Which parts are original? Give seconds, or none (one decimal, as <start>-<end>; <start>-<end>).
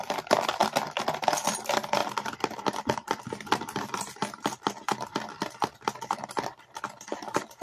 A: 0.0-2.0; 6.6-7.6